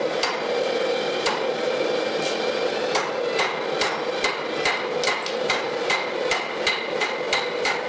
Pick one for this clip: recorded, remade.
recorded